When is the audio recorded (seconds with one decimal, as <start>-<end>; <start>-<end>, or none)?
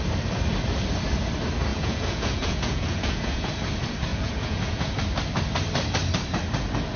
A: 0.0-1.7; 3.5-4.1; 4.9-7.0